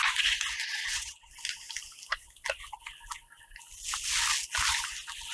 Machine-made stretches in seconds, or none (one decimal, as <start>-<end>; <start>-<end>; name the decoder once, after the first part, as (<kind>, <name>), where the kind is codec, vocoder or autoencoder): 0.6-1.3 (vocoder, WaveNeXt)